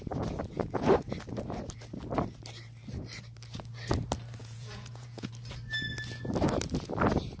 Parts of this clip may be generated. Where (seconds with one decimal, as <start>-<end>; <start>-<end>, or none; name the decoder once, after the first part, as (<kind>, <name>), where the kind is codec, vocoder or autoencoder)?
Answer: 4.4-5.3 (vocoder, Vocos)